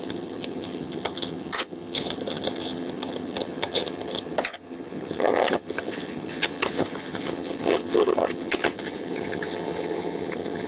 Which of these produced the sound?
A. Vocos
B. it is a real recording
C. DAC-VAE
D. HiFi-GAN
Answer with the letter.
D